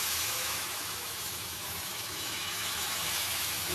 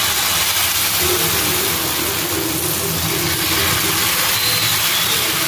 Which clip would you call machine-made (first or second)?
first